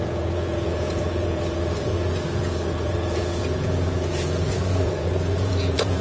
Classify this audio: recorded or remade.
remade